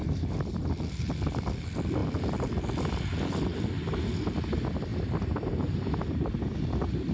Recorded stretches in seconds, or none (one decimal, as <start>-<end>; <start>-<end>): 0.0-4.9; 6.4-7.1